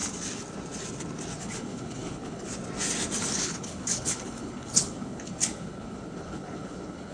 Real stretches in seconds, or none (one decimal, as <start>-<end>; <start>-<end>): 0.0-1.4; 2.5-3.3